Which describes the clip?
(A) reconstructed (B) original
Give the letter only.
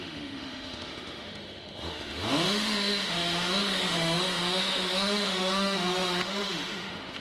A